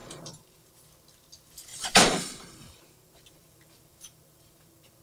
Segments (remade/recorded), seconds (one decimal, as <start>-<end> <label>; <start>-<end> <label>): 0.0-0.7 remade; 0.7-1.7 recorded; 1.7-5.0 remade